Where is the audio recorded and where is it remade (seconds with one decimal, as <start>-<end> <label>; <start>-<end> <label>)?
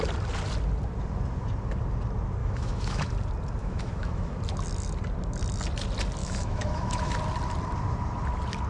0.0-2.4 recorded; 2.4-3.1 remade; 3.1-3.6 recorded; 3.6-4.4 remade; 4.4-6.2 recorded; 6.2-7.1 remade; 7.1-8.7 recorded